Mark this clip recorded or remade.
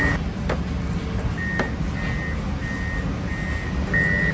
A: recorded